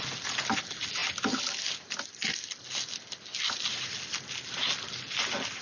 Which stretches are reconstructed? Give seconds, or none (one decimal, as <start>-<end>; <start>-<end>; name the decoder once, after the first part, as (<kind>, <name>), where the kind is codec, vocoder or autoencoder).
none